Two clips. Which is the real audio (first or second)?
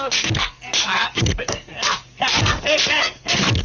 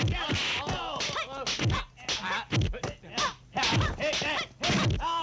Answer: second